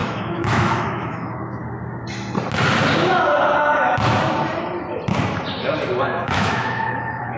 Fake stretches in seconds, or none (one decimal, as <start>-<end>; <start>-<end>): 0.0-1.6; 6.0-7.4